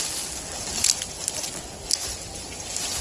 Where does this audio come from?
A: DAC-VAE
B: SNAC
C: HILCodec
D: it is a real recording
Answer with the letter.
D